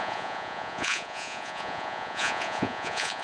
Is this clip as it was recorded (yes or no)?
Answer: no